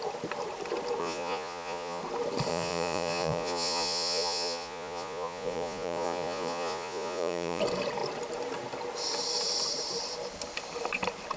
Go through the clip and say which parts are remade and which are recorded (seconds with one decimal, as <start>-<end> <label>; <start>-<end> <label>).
0.0-1.0 recorded; 1.0-2.0 remade; 2.0-2.5 recorded; 2.5-7.6 remade; 7.6-11.4 recorded